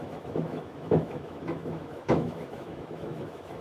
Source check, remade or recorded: remade